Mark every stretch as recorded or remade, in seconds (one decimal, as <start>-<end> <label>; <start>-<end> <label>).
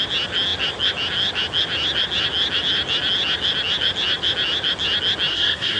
0.0-5.3 recorded; 5.3-5.8 remade